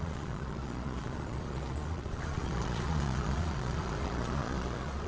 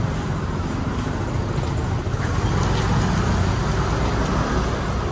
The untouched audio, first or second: second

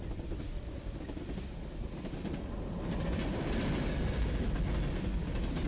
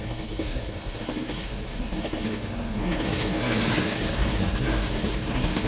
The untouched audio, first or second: first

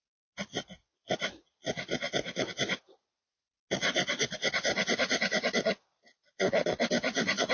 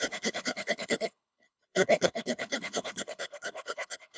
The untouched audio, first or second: first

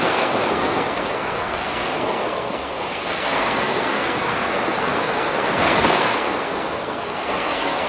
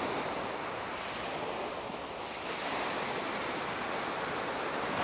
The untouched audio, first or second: second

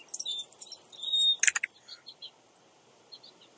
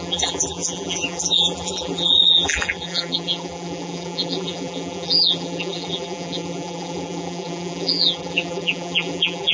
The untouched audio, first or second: first